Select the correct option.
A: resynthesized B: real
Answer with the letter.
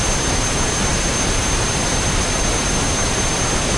A